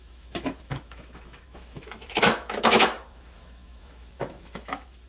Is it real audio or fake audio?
fake